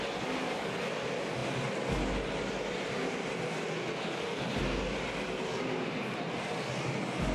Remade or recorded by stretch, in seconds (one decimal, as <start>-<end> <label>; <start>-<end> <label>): 0.0-7.3 recorded